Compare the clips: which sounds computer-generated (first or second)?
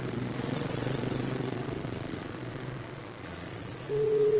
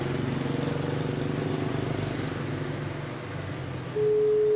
first